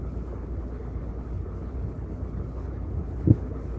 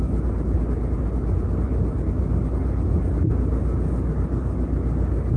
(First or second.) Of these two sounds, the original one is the second